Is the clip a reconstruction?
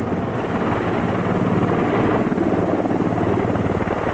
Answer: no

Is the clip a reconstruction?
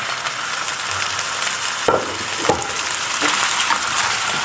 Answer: no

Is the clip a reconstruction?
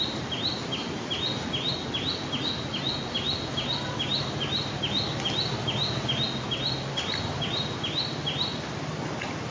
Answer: no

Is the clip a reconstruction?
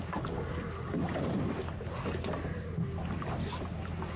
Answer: no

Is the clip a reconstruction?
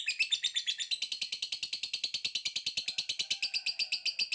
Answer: no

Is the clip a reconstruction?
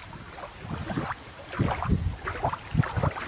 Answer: no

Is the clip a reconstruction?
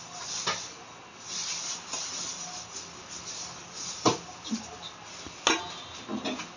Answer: no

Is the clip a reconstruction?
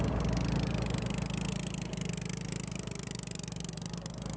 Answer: no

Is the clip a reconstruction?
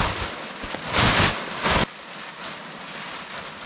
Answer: no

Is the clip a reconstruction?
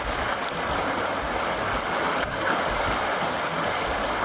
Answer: no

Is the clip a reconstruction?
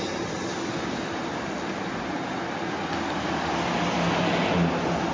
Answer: no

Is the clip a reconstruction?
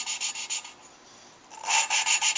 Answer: no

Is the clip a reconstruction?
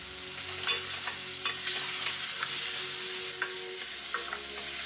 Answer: no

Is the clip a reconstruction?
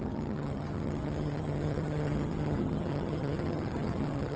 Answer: yes